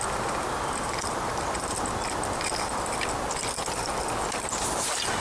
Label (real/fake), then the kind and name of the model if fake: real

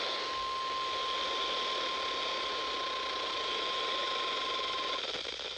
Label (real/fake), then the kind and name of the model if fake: real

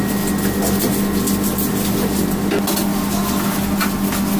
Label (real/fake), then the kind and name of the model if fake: real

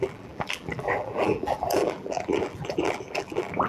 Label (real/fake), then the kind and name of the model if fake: fake, vocoder, BigVGAN v2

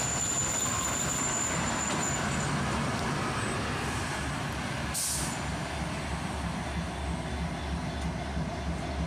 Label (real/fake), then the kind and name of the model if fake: real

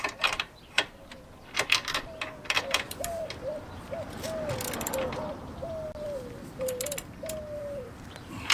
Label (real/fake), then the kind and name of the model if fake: fake, vocoder, BigVGAN v2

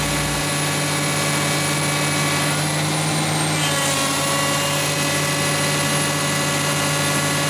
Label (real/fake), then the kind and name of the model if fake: real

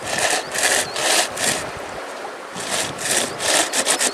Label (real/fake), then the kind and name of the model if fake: real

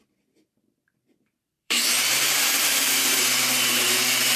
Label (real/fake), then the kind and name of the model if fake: fake, vocoder, BigVGAN v2